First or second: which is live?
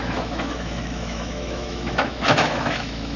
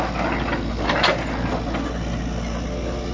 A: second